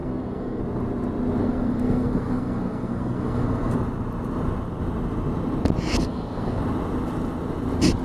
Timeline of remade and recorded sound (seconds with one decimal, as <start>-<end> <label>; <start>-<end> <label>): 0.0-0.6 remade; 0.6-1.4 recorded; 1.4-3.8 remade; 3.8-5.9 recorded; 5.9-6.6 remade; 6.6-8.0 recorded